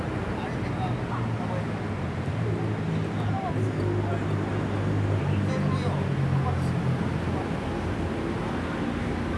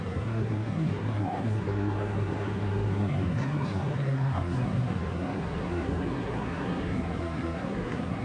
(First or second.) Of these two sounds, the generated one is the second